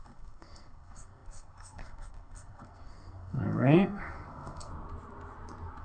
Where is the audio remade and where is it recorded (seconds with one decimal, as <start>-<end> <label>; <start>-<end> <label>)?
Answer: 0.0-4.7 remade; 4.7-5.8 recorded